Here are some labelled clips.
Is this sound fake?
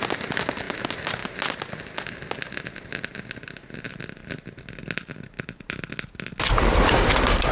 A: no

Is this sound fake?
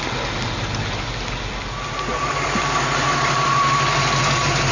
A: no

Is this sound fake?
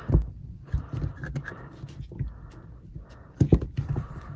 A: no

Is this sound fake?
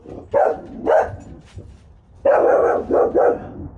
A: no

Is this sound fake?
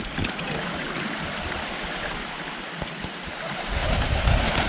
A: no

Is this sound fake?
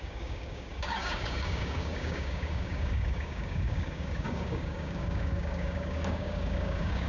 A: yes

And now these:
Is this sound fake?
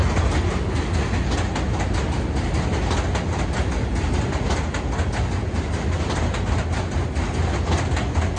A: no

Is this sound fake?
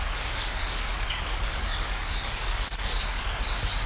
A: yes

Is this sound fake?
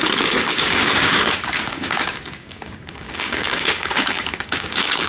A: yes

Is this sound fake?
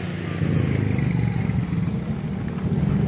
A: no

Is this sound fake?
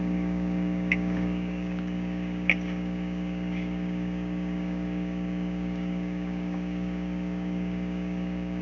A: yes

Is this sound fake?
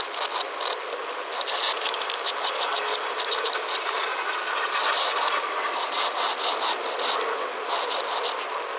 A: no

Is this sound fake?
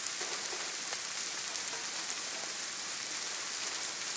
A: no